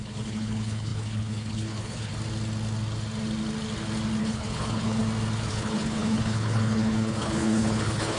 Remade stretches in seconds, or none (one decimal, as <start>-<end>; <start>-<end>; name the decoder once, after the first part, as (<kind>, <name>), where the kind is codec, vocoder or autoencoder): 0.0-2.1 (codec, HILCodec); 4.2-5.0; 5.5-8.2